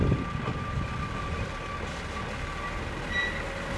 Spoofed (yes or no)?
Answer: no